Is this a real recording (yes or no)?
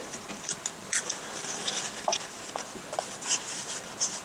yes